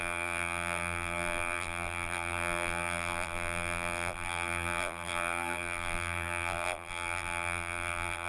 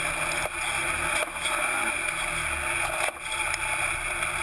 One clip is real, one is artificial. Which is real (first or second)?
second